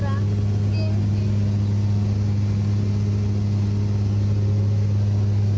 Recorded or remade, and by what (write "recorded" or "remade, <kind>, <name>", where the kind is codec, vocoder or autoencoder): recorded